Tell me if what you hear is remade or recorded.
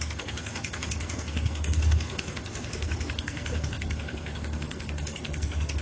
remade